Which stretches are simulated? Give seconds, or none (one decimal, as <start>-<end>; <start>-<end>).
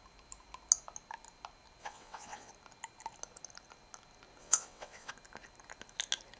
1.8-2.5; 4.4-5.1